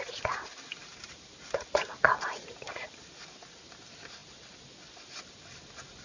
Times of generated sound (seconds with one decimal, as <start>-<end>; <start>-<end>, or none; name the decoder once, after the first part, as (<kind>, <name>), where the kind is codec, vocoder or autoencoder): 0.7-1.4 (vocoder, BigVGAN v2)